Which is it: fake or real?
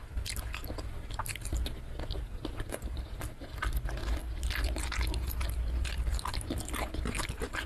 real